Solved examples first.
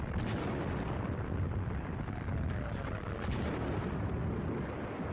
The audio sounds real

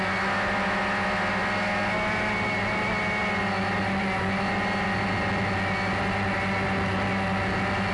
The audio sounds real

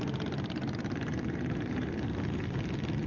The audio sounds fake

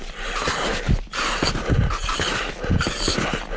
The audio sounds real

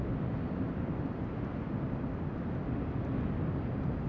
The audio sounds real